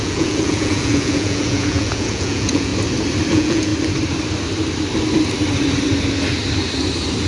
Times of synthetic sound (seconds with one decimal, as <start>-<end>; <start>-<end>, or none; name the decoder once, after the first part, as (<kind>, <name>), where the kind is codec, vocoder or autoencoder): 0.0-2.7 (vocoder, Vocos); 3.3-3.7

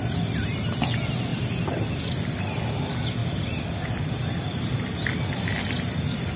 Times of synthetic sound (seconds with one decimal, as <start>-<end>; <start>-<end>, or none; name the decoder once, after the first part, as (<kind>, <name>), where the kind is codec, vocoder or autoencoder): none

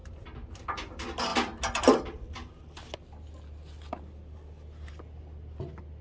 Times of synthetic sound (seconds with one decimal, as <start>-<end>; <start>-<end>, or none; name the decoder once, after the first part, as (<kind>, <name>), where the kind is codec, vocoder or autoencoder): none

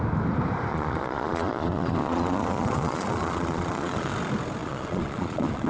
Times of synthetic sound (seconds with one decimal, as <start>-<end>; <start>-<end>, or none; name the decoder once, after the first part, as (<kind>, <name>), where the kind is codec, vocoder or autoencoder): 0.7-4.1 (vocoder, Vocos); 4.6-5.7